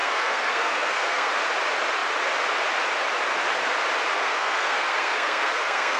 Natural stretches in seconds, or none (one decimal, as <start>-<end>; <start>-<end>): 1.3-4.1